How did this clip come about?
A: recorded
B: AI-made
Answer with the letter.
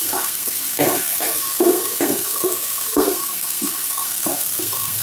B